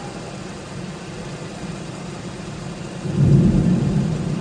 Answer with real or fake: real